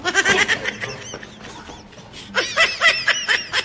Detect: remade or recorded recorded